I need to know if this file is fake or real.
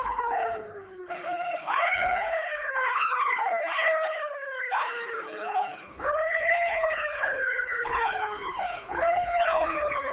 fake